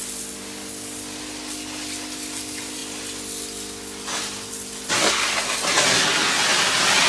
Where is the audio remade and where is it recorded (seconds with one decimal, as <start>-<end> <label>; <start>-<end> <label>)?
0.0-7.1 recorded